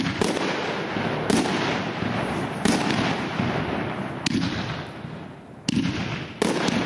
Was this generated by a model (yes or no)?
no